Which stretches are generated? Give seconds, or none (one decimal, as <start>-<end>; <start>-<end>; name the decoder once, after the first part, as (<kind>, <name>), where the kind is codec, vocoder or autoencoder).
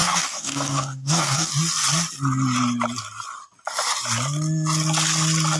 0.0-1.5 (codec, DAC)